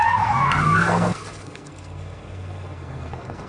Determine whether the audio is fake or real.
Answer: fake